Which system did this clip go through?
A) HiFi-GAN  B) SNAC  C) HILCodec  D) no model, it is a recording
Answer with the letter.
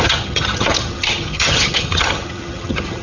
A